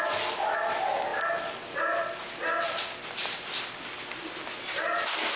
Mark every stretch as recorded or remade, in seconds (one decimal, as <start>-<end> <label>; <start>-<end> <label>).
0.0-5.4 recorded